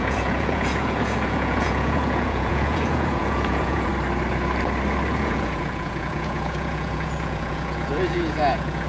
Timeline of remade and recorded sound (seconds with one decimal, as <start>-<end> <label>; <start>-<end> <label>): 0.0-3.9 remade; 3.9-5.2 recorded; 5.2-8.9 remade